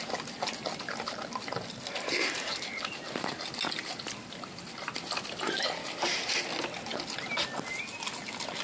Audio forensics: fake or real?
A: real